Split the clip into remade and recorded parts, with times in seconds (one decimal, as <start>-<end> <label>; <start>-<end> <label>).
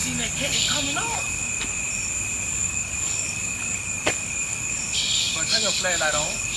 0.0-1.5 remade; 1.5-2.5 recorded; 2.5-6.6 remade